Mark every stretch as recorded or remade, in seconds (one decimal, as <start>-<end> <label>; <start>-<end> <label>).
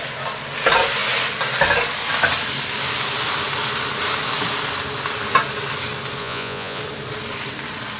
0.0-6.2 recorded; 6.2-6.8 remade; 6.8-8.0 recorded